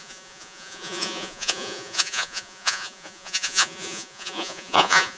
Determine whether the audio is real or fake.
fake